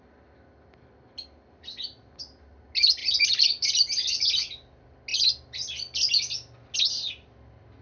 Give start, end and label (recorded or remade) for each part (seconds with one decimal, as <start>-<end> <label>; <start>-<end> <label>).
0.0-7.8 recorded